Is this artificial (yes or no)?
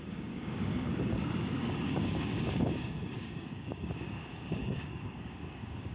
yes